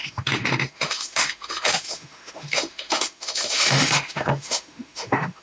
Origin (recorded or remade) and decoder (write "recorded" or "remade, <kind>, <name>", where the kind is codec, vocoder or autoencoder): remade, autoencoder, DAC-VAE